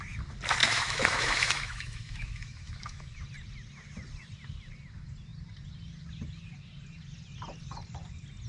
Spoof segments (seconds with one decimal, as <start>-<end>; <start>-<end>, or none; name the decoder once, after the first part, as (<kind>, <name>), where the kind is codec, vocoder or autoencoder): 0.6-3.2 (autoencoder, DAC-VAE)